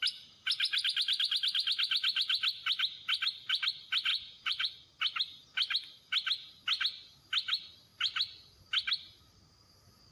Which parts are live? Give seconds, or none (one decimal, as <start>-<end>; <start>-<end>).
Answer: 0.0-4.1; 4.7-10.1